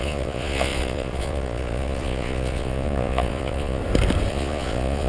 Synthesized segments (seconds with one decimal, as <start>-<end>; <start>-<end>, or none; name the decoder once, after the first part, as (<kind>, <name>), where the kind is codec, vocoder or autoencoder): 0.0-3.8 (vocoder, Vocos); 4.3-5.1